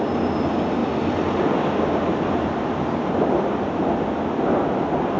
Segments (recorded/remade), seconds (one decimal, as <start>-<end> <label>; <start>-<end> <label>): 0.0-5.2 recorded